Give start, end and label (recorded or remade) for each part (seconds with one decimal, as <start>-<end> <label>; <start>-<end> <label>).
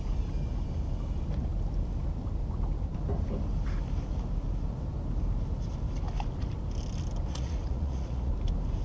0.0-7.3 recorded; 7.3-8.3 remade; 8.3-8.8 recorded